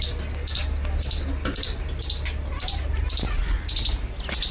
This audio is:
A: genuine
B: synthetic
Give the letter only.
A